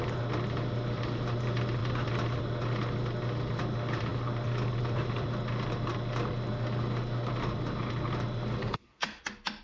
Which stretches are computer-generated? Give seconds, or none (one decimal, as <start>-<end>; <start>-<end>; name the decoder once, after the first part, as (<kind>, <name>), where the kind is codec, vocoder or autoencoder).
8.6-9.2 (codec, SNAC)